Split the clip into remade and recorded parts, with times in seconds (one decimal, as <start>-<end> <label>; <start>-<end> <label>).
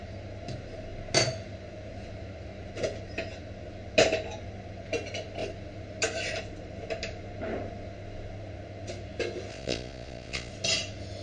0.0-9.5 recorded; 9.5-10.5 remade; 10.5-11.2 recorded